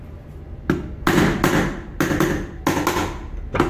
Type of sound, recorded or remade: recorded